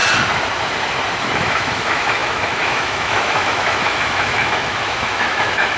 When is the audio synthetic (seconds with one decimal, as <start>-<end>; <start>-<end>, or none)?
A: 1.2-5.8